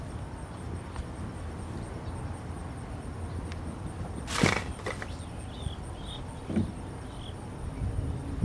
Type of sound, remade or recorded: recorded